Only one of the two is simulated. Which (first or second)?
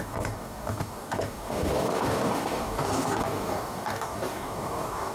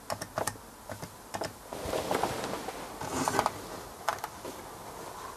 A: first